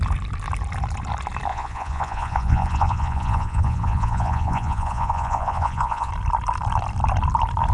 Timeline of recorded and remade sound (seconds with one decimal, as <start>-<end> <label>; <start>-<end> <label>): 0.0-1.5 recorded; 1.5-6.1 remade; 6.1-7.7 recorded